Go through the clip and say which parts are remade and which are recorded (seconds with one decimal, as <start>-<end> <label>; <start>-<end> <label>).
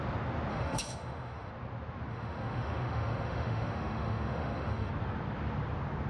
0.0-0.5 recorded; 0.5-1.5 remade; 1.5-2.1 recorded; 2.1-4.9 remade; 4.9-6.1 recorded